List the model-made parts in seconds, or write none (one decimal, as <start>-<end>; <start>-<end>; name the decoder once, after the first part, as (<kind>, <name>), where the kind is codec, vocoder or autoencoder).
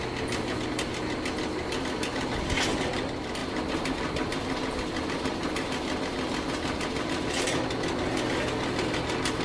none